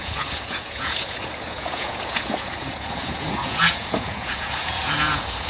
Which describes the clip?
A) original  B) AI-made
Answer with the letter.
B